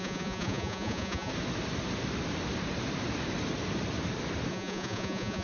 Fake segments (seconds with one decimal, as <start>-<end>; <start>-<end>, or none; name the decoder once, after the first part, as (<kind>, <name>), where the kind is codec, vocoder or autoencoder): 0.0-1.3 (vocoder, Vocos); 4.5-5.4